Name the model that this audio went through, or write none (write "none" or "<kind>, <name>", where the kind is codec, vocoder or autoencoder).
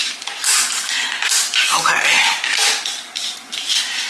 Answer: none